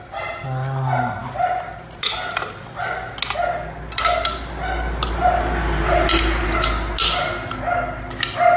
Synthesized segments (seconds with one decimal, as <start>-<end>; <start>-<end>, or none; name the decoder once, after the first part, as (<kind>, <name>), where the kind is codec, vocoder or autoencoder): none